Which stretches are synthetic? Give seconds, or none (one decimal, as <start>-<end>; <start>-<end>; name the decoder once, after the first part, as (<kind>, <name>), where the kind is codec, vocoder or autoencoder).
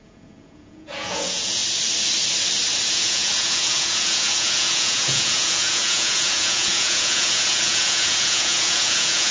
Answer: 0.0-1.6 (vocoder, Vocos); 2.9-9.3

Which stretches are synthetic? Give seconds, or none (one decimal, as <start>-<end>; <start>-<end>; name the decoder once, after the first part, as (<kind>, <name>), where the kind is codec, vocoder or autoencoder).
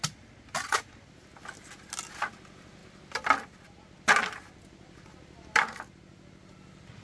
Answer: none